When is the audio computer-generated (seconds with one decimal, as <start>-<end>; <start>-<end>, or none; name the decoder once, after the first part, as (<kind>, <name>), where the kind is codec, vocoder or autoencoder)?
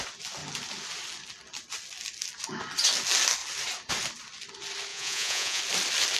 4.9-5.6 (vocoder, Vocos)